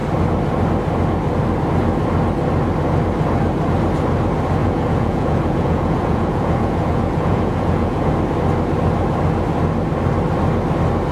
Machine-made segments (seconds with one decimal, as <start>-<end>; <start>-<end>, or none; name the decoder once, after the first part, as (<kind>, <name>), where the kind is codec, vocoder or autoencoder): 4.6-8.1 (vocoder, Vocos)